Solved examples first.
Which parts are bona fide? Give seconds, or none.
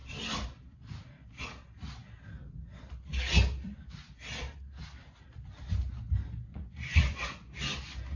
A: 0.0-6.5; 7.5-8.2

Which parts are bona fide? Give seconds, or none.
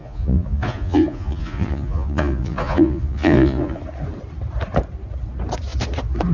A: 3.8-6.3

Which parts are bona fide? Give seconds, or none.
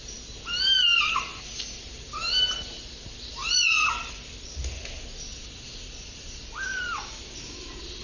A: 0.0-3.4; 3.9-5.3; 6.5-8.0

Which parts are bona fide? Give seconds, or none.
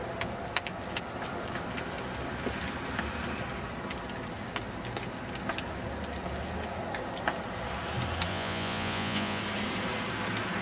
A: 0.0-8.3; 9.4-10.6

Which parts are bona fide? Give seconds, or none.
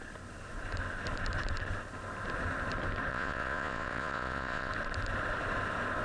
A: 0.0-3.1; 4.7-6.0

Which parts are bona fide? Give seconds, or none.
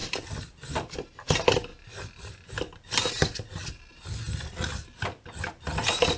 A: 0.0-6.2